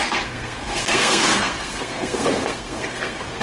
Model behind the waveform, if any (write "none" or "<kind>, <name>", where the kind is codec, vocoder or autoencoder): codec, SNAC